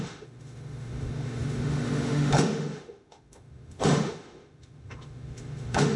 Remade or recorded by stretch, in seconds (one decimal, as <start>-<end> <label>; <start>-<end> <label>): 0.0-6.0 remade